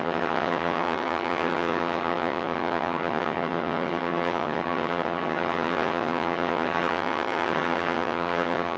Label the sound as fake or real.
fake